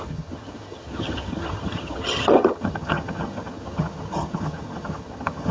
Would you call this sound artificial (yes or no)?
yes